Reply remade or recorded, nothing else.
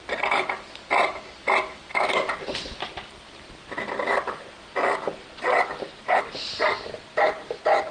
recorded